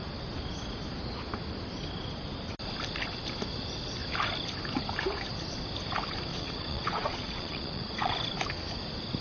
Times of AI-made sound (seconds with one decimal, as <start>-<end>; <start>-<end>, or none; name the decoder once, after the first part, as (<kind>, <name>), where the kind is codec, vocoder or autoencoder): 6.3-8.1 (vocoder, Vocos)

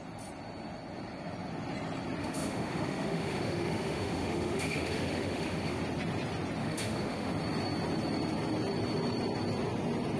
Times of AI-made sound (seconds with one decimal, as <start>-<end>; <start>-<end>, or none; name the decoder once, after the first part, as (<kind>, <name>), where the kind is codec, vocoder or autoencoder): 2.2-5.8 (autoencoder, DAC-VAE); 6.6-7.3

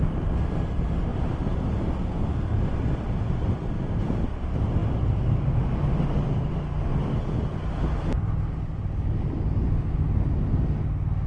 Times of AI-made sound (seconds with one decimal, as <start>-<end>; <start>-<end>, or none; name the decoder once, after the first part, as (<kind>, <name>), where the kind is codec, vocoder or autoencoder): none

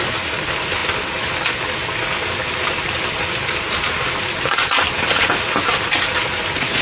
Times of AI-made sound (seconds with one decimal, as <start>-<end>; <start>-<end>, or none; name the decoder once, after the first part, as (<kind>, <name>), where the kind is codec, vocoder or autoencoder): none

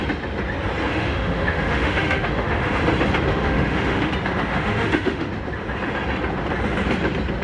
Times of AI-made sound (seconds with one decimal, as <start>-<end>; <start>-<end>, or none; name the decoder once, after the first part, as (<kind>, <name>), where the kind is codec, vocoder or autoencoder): 0.9-2.8 (autoencoder, DAC-VAE); 3.3-4.1; 4.5-5.3